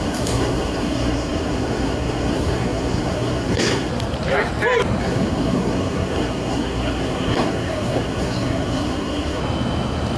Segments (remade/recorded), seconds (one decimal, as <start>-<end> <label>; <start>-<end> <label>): 0.0-3.9 remade; 3.9-5.0 recorded; 5.0-9.4 remade; 9.4-10.2 recorded